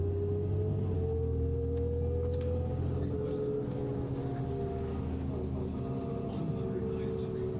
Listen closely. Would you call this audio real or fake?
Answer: real